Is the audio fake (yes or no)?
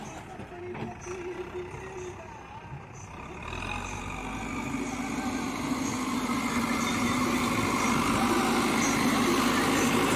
no